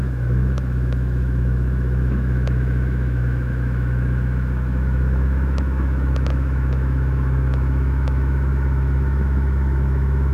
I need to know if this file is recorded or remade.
remade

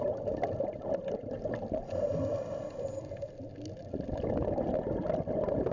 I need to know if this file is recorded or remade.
recorded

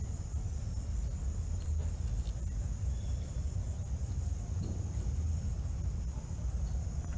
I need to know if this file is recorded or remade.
recorded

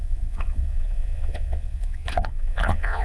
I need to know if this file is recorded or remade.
remade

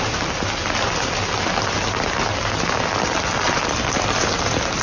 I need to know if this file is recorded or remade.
recorded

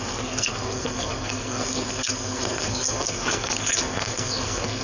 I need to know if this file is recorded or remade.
remade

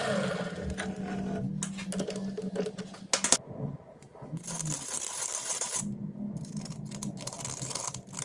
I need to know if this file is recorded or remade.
recorded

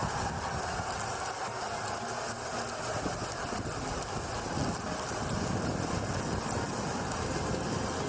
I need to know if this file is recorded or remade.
recorded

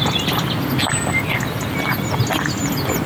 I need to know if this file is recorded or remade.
recorded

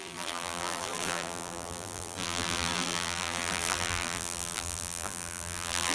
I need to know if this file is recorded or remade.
remade